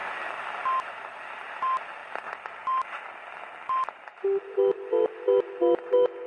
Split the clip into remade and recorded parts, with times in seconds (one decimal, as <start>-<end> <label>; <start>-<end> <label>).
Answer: 0.0-6.3 recorded